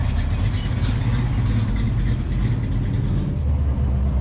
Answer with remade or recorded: recorded